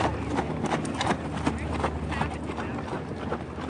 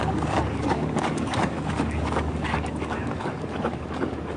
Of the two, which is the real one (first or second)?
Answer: first